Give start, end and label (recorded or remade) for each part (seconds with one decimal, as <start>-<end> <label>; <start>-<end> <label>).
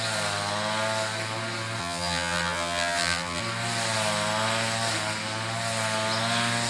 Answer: 0.0-1.8 recorded; 1.8-3.4 remade; 3.4-6.7 recorded